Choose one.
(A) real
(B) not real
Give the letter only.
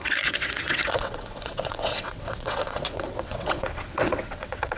B